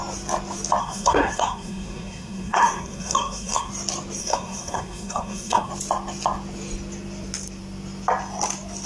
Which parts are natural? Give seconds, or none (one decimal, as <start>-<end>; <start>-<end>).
0.0-0.8; 3.7-4.2; 5.7-8.9